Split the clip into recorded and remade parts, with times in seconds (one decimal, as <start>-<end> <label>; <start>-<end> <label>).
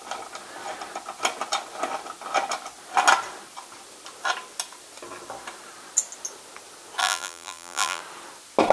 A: 0.0-7.0 recorded; 7.0-8.0 remade; 8.0-8.7 recorded